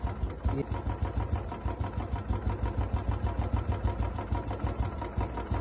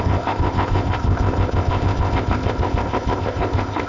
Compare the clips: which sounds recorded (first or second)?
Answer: first